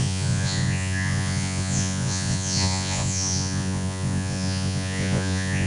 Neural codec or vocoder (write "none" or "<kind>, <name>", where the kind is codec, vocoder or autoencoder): vocoder, Vocos